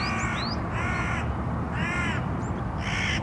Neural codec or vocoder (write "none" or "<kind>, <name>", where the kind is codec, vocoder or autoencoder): none